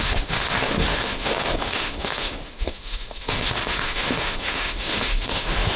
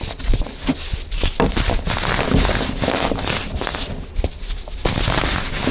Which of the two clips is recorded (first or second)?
second